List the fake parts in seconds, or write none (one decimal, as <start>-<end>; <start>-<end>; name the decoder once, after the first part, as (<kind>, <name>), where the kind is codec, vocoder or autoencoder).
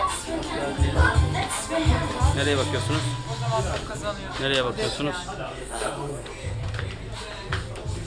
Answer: 5.5-6.3 (codec, SNAC)